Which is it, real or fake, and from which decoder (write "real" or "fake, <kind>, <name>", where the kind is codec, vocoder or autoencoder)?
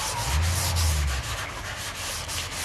real